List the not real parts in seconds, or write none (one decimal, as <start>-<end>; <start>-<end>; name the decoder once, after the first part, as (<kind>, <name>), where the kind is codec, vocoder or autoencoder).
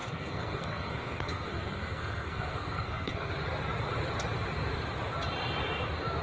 0.0-3.3 (codec, SNAC)